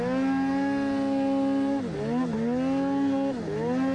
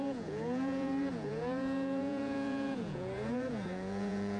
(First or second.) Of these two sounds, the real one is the first